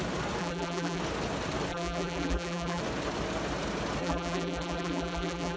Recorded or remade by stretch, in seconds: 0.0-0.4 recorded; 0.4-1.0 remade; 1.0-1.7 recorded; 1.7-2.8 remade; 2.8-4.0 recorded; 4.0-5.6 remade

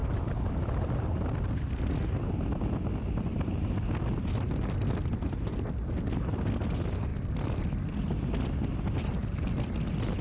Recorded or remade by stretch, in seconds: 0.0-10.2 recorded

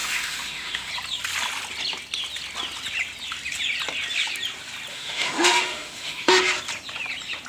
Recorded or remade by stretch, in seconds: 0.0-0.9 remade; 0.9-4.9 recorded; 4.9-6.4 remade; 6.4-7.5 recorded

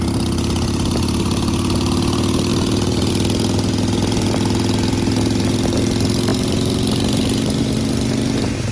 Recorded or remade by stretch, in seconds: 0.0-2.5 recorded; 2.5-3.1 remade; 3.1-6.3 recorded; 6.3-7.6 remade; 7.6-8.7 recorded

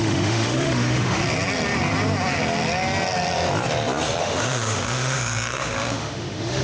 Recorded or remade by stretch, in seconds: 0.0-1.2 remade; 1.2-4.2 recorded; 4.2-6.6 remade

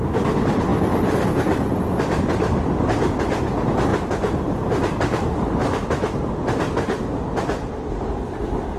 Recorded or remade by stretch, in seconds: 0.0-3.9 recorded; 3.9-6.2 remade; 6.2-8.8 recorded

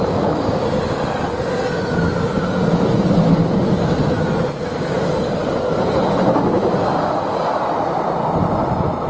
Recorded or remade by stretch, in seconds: 0.0-9.1 recorded